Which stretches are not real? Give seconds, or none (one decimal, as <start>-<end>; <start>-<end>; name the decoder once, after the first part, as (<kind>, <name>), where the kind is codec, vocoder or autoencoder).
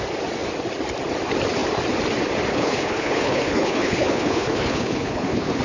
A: 2.5-5.6 (codec, HILCodec)